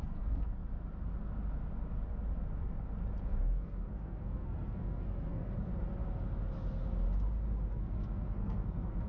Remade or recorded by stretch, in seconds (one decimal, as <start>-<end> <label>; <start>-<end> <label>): 0.0-0.6 remade; 0.6-3.4 recorded; 3.4-5.7 remade; 5.7-7.7 recorded; 7.7-9.1 remade